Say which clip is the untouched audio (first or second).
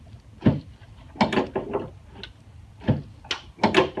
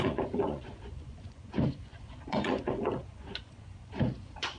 first